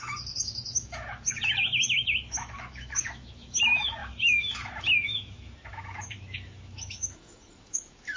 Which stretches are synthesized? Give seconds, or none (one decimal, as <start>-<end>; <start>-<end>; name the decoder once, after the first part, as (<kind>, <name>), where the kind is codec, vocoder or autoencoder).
0.0-8.2 (autoencoder, DAC-VAE)